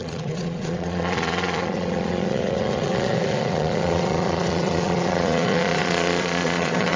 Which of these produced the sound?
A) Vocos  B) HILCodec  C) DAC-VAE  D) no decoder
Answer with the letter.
A